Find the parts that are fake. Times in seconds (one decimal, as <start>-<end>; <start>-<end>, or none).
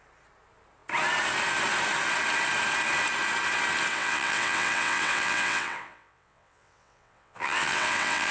3.9-8.3